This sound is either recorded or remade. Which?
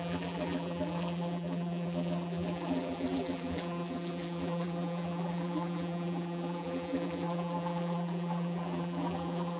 remade